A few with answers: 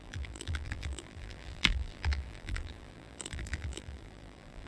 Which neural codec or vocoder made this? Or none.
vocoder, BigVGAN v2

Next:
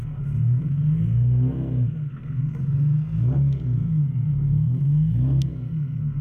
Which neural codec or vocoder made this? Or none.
codec, SNAC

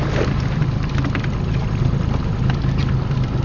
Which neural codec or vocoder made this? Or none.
none